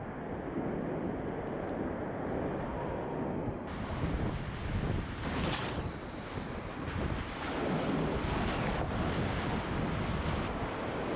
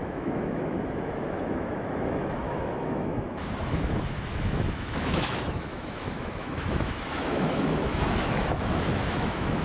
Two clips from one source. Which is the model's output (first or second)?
second